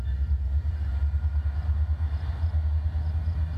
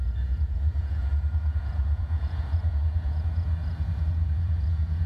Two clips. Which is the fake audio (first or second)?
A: second